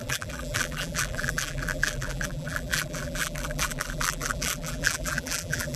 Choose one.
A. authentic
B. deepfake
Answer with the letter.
B